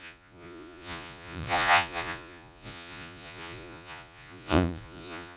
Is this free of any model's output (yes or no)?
no